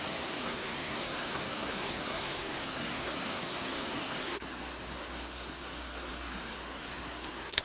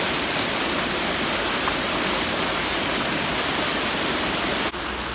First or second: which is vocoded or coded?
first